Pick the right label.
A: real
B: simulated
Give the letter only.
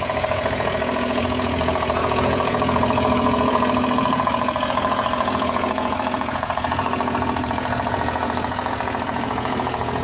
B